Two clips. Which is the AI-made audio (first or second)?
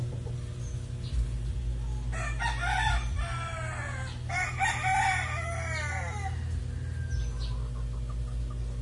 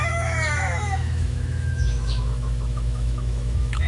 second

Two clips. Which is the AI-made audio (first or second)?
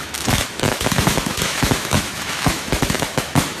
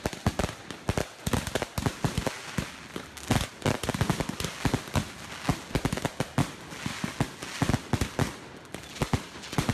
first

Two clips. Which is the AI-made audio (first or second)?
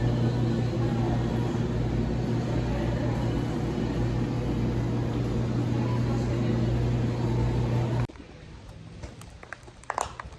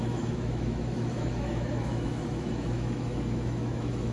second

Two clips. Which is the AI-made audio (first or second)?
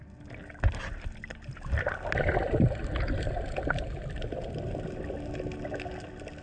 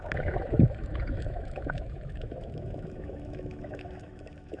second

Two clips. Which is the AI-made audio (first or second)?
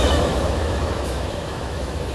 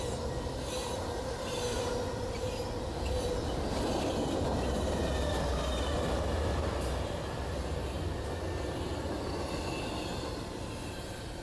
first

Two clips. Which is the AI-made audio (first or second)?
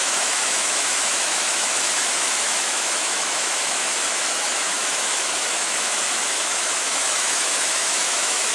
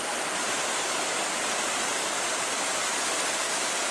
first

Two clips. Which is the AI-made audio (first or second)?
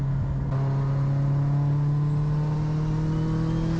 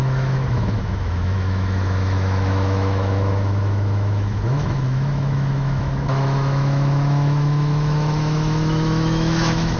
second